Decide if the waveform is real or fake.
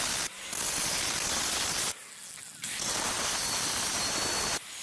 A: real